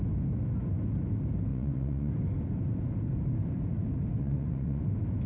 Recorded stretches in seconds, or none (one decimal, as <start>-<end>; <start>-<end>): 0.0-1.5; 2.1-4.2; 4.8-5.3